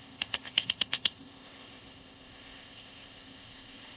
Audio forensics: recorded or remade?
remade